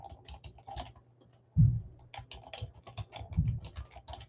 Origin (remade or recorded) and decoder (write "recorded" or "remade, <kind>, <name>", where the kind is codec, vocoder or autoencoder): recorded